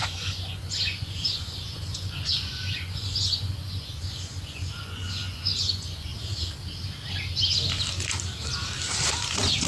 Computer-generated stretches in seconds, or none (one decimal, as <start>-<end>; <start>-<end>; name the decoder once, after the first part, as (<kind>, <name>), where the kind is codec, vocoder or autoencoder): 0.0-6.1 (vocoder, Vocos)